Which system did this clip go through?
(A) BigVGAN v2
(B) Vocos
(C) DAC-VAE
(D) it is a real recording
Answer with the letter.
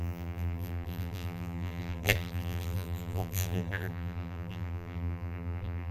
A